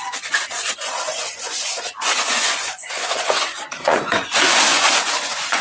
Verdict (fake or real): fake